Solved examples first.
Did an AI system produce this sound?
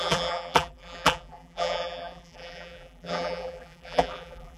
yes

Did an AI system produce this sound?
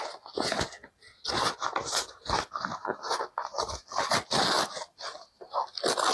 no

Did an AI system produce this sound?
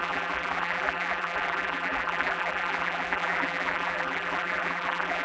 yes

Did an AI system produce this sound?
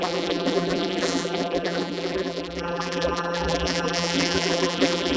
yes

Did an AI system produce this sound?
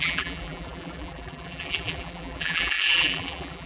yes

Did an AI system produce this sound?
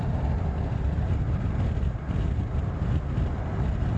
no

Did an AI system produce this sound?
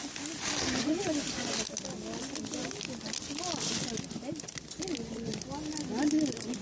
no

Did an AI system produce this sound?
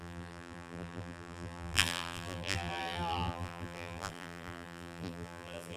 yes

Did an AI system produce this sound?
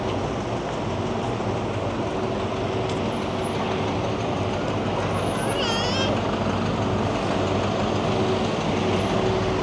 no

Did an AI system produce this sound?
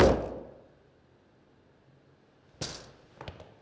no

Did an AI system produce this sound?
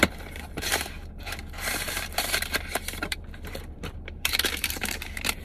yes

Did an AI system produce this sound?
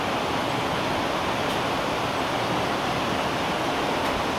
no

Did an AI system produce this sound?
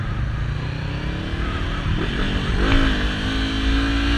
no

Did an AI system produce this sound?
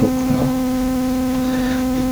no